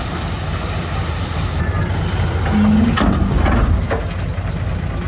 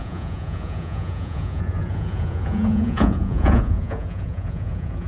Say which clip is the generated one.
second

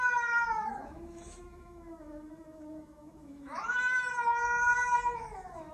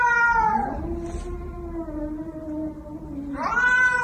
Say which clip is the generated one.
first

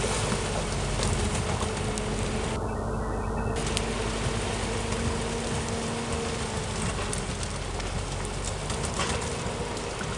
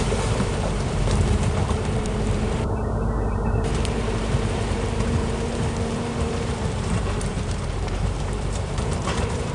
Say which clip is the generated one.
second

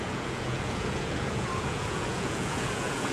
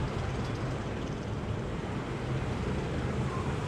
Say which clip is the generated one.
first